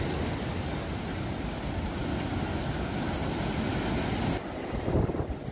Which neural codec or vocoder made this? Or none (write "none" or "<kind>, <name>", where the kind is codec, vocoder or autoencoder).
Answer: none